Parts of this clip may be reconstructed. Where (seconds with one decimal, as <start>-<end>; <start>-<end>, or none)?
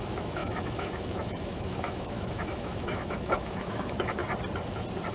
0.0-4.2